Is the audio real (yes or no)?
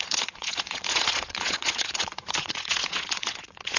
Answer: no